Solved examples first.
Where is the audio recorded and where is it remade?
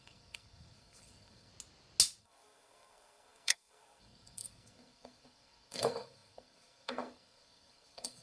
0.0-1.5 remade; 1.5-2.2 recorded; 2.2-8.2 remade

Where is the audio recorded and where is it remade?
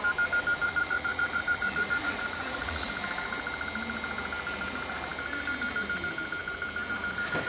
0.0-0.6 recorded; 0.6-2.9 remade; 2.9-7.5 recorded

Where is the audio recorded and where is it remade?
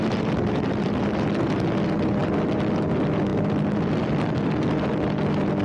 0.0-5.6 recorded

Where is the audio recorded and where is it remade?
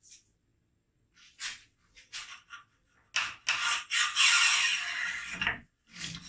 0.0-6.3 recorded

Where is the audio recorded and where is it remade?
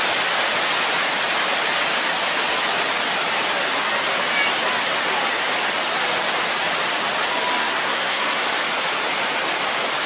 0.0-7.6 recorded; 7.6-8.5 remade; 8.5-10.1 recorded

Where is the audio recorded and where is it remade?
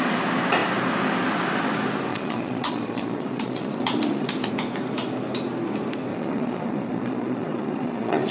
0.0-2.1 recorded; 2.1-4.3 remade; 4.3-6.1 recorded; 6.1-8.3 remade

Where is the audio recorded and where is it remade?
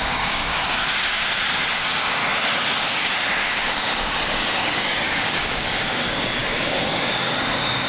0.0-2.2 remade; 2.2-3.1 recorded; 3.1-7.9 remade